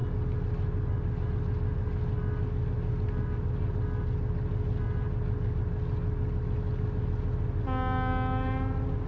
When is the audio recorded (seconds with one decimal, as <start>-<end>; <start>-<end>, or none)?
0.0-9.1